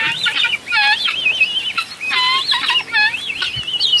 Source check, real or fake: real